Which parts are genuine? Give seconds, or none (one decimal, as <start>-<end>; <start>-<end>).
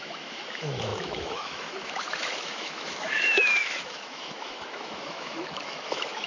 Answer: none